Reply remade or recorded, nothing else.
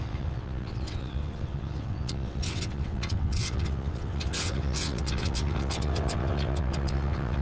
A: remade